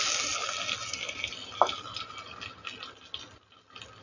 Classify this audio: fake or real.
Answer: real